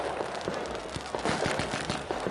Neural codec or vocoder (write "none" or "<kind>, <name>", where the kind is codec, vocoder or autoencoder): none